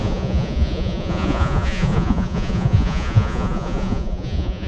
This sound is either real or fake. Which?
fake